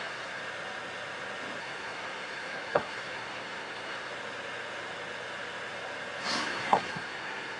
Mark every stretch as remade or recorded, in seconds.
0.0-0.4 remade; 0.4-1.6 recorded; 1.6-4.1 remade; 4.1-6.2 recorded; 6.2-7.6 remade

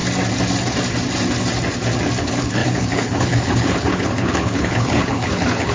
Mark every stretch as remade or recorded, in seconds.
0.0-2.2 recorded; 2.2-5.7 remade

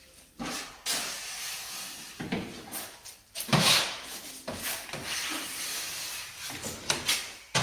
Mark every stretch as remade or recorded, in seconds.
0.0-3.5 recorded; 3.5-4.2 remade; 4.2-7.6 recorded

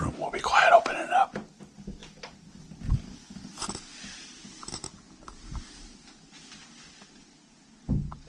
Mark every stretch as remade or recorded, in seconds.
0.0-8.3 recorded

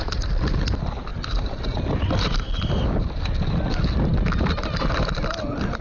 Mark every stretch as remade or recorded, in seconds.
0.0-5.8 recorded

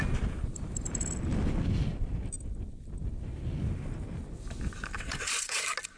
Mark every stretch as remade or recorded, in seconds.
0.0-4.9 recorded; 4.9-5.6 remade; 5.6-6.0 recorded

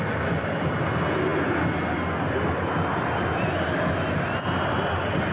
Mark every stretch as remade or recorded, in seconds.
0.0-5.3 recorded